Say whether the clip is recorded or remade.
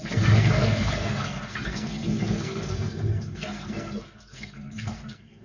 remade